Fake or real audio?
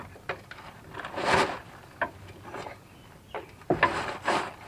real